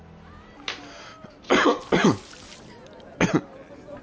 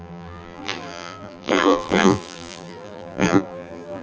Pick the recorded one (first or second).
first